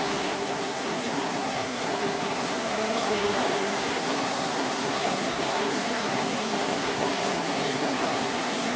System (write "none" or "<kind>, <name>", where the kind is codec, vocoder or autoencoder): codec, SNAC